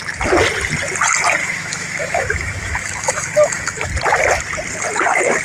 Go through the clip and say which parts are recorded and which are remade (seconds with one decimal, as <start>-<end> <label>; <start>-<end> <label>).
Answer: 0.0-1.4 recorded; 1.4-3.9 remade; 3.9-5.4 recorded